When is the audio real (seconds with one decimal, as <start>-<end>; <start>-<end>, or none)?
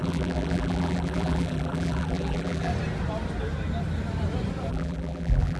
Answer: 2.7-4.7